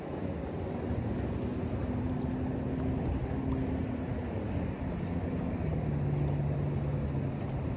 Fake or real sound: real